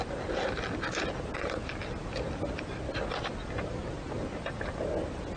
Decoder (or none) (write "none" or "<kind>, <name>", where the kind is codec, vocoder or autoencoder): none